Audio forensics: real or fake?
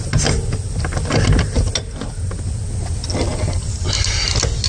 real